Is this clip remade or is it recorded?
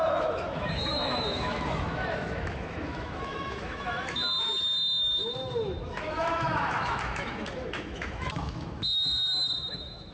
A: remade